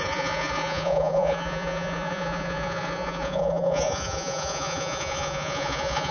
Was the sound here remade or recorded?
remade